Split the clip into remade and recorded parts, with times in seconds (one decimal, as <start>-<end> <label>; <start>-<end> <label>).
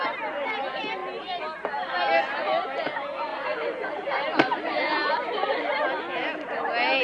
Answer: 0.0-3.3 recorded; 3.3-6.0 remade; 6.0-7.0 recorded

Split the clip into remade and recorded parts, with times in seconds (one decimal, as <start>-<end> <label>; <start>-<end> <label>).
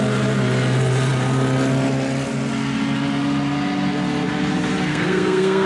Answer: 0.0-4.9 recorded; 4.9-5.7 remade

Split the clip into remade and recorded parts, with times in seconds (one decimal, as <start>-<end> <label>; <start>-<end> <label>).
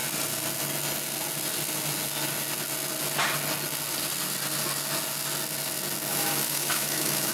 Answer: 0.0-6.1 recorded; 6.1-7.3 remade